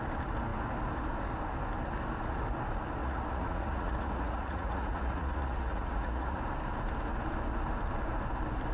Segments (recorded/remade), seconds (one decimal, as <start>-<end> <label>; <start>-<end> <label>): 0.0-3.0 recorded; 3.0-6.4 remade; 6.4-8.7 recorded